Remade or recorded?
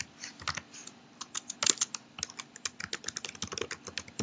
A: recorded